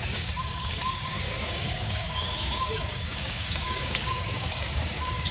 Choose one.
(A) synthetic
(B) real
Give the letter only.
A